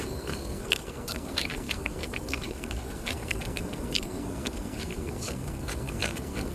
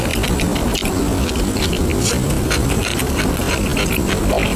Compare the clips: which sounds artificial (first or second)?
first